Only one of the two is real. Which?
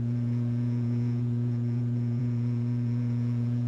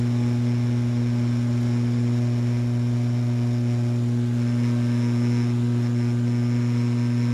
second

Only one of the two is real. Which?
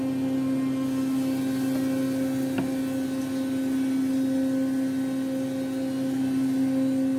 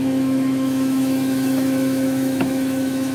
first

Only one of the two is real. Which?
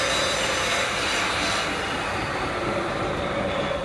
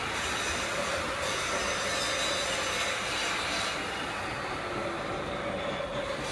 second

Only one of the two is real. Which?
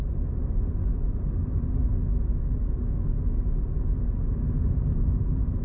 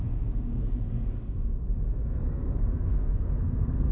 first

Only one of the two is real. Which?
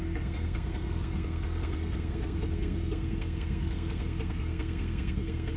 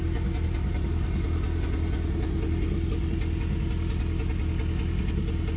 second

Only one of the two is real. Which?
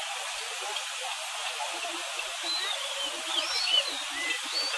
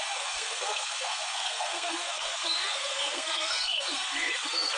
first